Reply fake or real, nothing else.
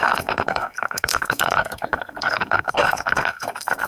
fake